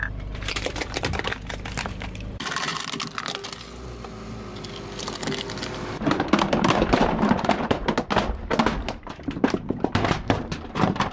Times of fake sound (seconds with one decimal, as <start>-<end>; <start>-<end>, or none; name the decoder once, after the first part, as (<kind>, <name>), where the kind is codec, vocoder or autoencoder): 0.0-2.7 (vocoder, BigVGAN v2); 5.6-7.8; 9.0-11.1